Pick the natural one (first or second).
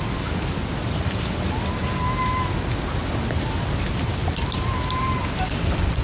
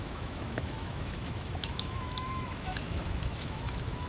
first